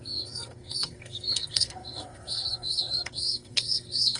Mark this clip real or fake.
fake